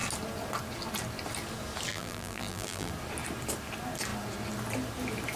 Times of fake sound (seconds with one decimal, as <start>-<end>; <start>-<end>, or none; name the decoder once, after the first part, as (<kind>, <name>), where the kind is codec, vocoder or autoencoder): 1.9-2.9 (vocoder, BigVGAN v2)